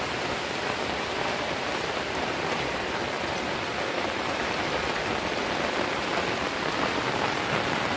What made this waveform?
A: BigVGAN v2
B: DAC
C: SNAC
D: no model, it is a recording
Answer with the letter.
D